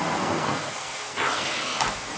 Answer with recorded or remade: remade